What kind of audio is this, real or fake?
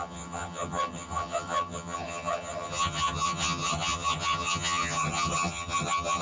fake